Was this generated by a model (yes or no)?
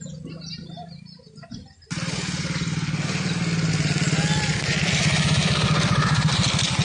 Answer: no